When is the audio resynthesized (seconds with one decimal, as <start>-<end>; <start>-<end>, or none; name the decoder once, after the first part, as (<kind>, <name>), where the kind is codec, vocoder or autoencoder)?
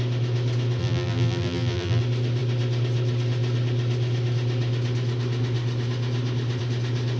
0.8-2.0 (vocoder, BigVGAN v2)